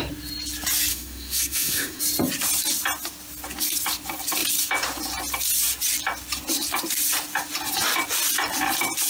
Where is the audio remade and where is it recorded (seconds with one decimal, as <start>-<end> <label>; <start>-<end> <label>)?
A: 0.0-0.9 recorded; 0.9-2.0 remade; 2.0-9.1 recorded